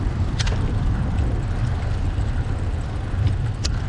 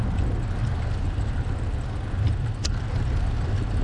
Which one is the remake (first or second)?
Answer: first